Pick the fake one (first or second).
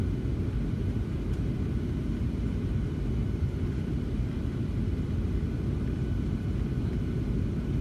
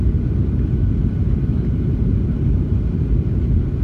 second